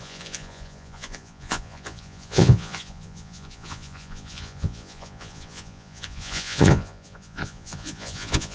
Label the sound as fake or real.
fake